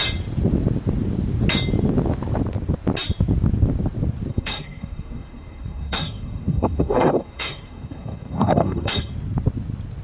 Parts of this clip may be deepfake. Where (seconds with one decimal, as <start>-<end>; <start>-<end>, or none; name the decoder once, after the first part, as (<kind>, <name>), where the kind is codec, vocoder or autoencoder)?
4.3-9.1 (codec, SNAC)